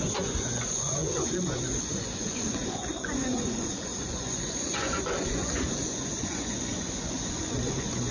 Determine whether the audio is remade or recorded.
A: remade